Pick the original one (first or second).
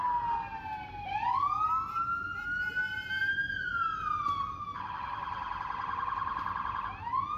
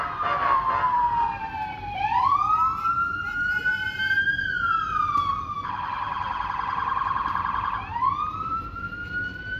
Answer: first